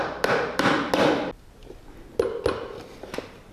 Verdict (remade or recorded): recorded